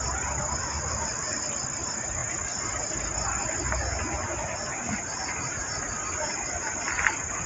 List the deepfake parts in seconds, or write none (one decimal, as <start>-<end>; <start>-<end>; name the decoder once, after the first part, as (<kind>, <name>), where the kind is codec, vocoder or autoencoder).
0.6-1.4 (vocoder, BigVGAN v2)